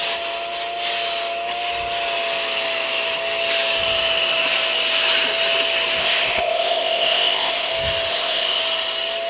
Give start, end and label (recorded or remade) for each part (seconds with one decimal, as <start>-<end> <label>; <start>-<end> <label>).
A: 0.0-6.0 recorded; 6.0-7.7 remade; 7.7-8.1 recorded; 8.1-8.6 remade; 8.6-9.3 recorded

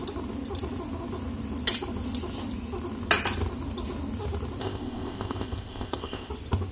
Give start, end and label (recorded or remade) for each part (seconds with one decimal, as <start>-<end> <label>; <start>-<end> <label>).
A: 0.0-4.6 recorded; 4.6-6.3 remade; 6.3-6.7 recorded

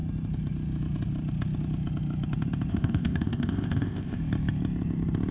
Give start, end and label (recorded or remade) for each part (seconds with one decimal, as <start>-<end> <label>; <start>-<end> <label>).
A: 0.0-2.7 recorded; 2.7-4.2 remade; 4.2-5.3 recorded

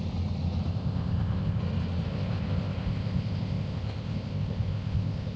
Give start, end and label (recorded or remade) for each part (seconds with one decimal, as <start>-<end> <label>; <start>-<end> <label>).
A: 0.0-0.7 recorded; 0.7-1.6 remade; 1.6-2.1 recorded; 2.1-5.4 remade

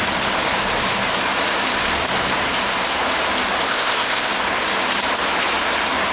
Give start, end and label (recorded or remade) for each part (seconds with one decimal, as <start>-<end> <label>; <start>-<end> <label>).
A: 0.0-3.7 recorded; 3.7-4.3 remade; 4.3-6.1 recorded

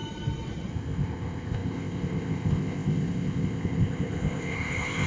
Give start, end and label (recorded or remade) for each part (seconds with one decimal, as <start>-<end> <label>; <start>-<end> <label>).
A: 0.0-0.7 recorded; 0.7-5.1 remade

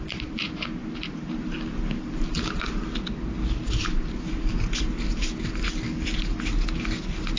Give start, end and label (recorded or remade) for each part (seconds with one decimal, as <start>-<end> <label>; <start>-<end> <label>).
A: 0.0-7.4 recorded

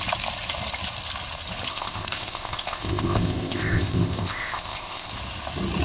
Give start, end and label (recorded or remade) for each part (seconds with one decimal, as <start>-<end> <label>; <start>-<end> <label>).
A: 0.0-1.7 recorded; 1.7-5.1 remade; 5.1-5.8 recorded